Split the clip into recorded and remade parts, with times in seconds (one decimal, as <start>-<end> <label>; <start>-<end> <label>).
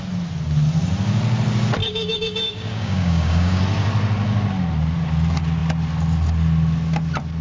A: 0.0-1.8 recorded; 1.8-3.6 remade; 3.6-7.4 recorded